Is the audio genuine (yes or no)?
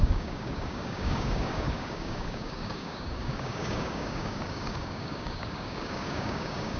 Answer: no